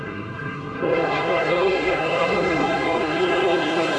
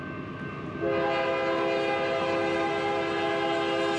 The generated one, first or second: first